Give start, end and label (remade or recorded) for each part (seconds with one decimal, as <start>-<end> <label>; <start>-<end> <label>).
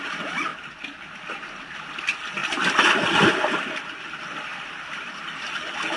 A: 0.0-0.5 recorded; 0.5-1.3 remade; 1.3-2.4 recorded; 2.4-6.0 remade